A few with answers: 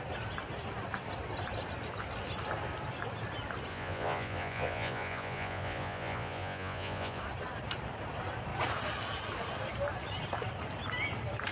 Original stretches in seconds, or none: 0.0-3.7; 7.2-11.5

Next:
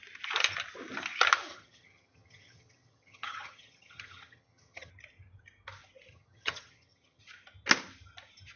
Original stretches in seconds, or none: 0.0-1.5; 4.9-6.1; 7.2-8.6